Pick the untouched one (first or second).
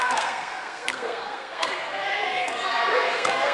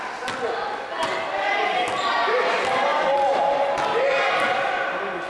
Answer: second